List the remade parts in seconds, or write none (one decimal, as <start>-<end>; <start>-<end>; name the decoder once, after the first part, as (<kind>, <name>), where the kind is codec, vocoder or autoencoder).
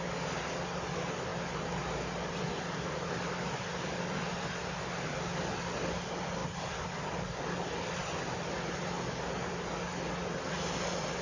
none